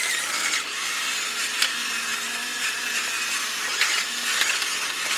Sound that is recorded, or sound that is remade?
recorded